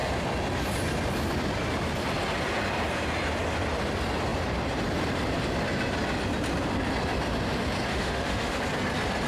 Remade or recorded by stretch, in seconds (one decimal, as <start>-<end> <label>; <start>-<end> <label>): 0.0-7.9 recorded; 7.9-8.6 remade; 8.6-9.3 recorded